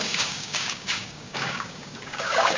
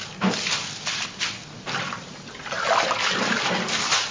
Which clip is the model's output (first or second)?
first